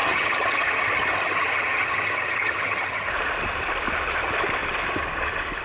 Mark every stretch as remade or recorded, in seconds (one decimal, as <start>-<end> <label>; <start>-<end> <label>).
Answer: 0.0-3.1 remade; 3.1-5.6 recorded